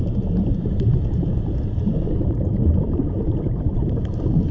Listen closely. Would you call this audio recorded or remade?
remade